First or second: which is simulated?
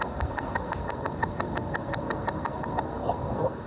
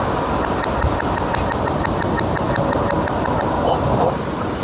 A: first